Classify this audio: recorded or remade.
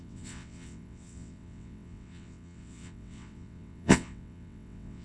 remade